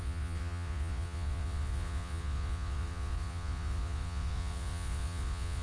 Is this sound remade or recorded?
remade